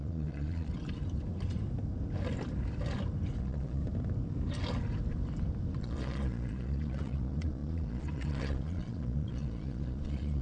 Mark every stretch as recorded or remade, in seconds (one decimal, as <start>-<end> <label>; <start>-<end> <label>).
0.0-0.7 remade; 0.7-3.4 recorded; 3.4-3.8 remade; 3.8-5.8 recorded; 5.8-10.4 remade